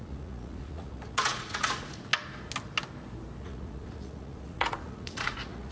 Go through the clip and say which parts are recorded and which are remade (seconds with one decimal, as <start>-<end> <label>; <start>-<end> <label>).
0.0-2.1 remade; 2.1-3.4 recorded; 3.4-5.7 remade